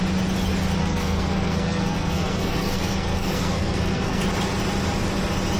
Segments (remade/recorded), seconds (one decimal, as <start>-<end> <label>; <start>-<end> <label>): 0.0-0.8 recorded; 0.8-4.2 remade; 4.2-5.6 recorded